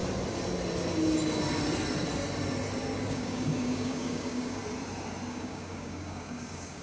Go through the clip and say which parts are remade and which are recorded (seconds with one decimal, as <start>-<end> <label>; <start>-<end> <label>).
0.0-3.1 recorded; 3.1-4.6 remade; 4.6-5.3 recorded; 5.3-6.8 remade